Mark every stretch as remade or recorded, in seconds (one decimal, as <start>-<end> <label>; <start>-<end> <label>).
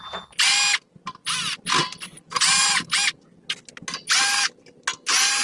0.0-5.4 recorded